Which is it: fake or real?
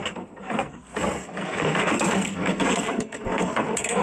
fake